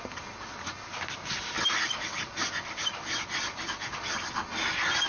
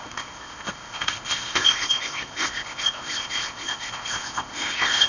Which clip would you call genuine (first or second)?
first